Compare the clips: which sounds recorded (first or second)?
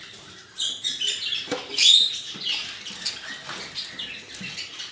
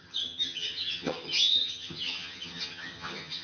first